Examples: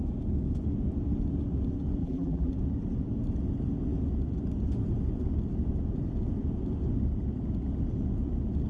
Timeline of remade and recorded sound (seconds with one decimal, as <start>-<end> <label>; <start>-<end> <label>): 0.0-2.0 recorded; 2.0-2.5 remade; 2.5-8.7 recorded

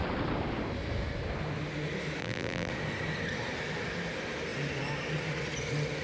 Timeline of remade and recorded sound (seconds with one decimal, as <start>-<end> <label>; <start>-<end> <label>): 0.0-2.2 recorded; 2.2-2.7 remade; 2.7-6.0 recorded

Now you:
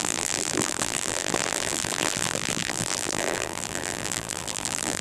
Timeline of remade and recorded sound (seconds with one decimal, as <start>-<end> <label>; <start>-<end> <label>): 0.0-5.0 remade

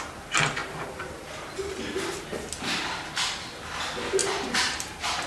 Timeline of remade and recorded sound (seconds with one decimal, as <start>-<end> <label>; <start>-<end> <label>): 0.0-0.6 recorded; 0.6-1.8 remade; 1.8-4.2 recorded; 4.2-5.3 remade

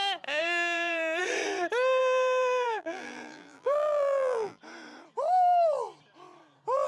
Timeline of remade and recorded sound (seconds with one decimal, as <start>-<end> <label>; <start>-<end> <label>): 0.0-0.4 recorded; 0.4-1.2 remade; 1.2-2.0 recorded; 2.0-4.6 remade; 4.6-6.9 recorded

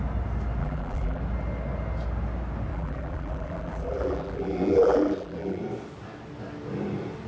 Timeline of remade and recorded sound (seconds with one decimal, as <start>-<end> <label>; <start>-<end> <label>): 0.0-0.6 recorded; 0.6-1.2 remade; 1.2-2.7 recorded; 2.7-5.6 remade; 5.6-7.3 recorded

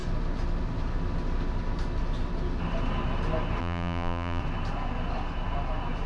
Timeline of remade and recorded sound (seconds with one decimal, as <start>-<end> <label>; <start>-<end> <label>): 0.0-3.6 recorded; 3.6-4.4 remade; 4.4-6.1 recorded

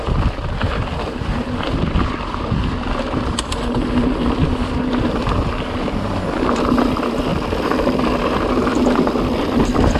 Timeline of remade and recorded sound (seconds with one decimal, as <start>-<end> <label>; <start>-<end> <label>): 0.0-4.4 recorded; 4.4-5.0 remade; 5.0-7.3 recorded; 7.3-8.0 remade; 8.0-8.7 recorded; 8.7-10.0 remade